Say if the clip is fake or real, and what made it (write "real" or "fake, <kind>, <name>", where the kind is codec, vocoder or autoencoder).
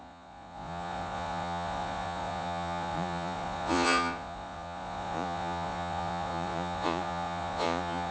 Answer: fake, vocoder, Vocos